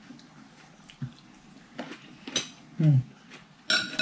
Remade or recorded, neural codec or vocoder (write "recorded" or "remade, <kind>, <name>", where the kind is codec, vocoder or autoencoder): recorded